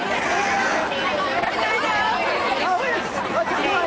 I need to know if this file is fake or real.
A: real